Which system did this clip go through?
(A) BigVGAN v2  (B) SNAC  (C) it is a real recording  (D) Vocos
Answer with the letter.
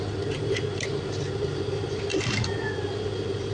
C